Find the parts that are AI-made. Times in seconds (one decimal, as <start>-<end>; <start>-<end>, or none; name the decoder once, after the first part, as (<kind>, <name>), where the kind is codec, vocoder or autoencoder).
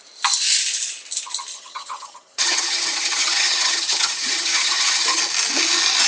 1.5-5.2 (vocoder, HiFi-GAN)